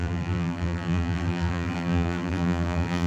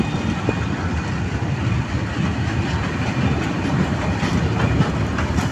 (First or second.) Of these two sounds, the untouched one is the second